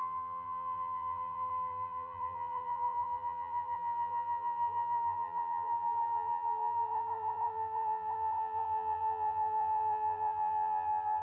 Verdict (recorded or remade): remade